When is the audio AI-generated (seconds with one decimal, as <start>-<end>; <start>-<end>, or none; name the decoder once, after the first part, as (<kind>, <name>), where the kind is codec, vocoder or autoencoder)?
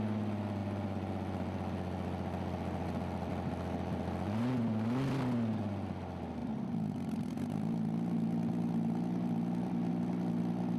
none